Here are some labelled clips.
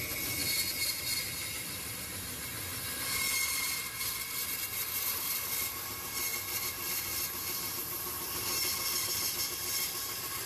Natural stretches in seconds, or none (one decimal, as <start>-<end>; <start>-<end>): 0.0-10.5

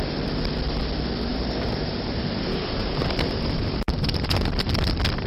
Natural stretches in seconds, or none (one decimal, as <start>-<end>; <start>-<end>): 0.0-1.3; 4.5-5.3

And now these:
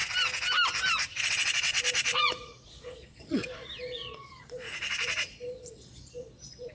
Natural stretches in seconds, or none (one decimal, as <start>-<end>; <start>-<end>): 0.0-1.1

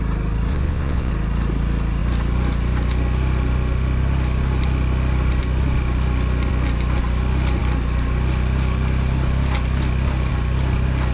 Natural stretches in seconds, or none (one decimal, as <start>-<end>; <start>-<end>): 0.0-0.5; 1.1-11.1